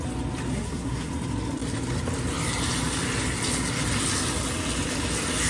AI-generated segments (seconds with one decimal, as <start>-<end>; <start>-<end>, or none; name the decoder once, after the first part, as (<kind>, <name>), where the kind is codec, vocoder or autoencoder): 0.5-1.1 (codec, SNAC)